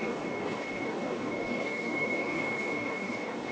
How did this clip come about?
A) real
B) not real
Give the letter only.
B